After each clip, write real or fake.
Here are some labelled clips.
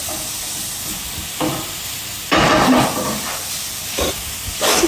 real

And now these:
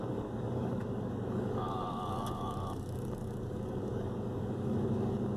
fake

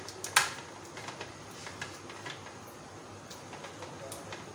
real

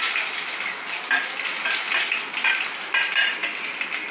real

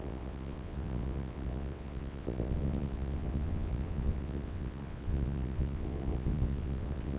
fake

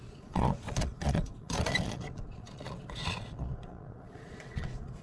fake